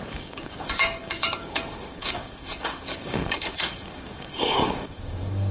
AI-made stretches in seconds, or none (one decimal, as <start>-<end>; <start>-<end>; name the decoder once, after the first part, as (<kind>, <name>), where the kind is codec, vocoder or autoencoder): 0.0-5.5 (codec, DAC)